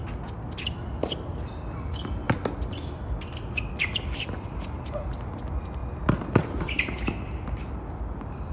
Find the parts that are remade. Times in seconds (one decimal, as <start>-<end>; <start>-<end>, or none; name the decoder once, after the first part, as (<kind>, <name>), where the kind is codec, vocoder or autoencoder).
none